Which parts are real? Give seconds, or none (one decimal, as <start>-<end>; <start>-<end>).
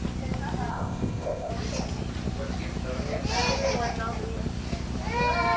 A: 0.0-0.7; 1.5-5.6